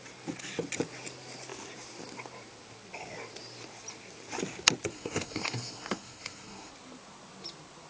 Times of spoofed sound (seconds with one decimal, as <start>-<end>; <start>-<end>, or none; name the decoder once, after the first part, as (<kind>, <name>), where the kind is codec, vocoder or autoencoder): 4.9-6.7 (codec, SNAC)